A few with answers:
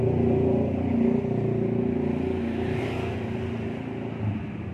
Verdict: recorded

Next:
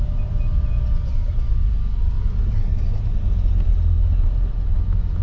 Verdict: recorded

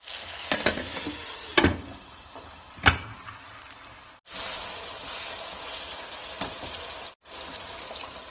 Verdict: recorded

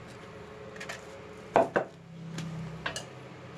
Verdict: recorded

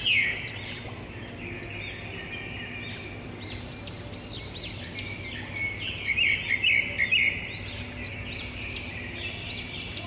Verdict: recorded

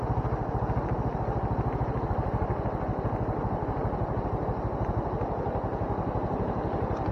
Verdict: recorded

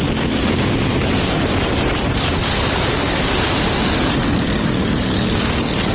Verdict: recorded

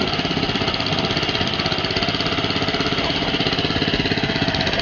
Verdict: recorded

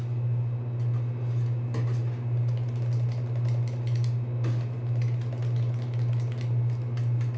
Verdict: recorded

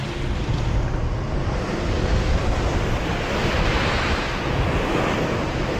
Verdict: recorded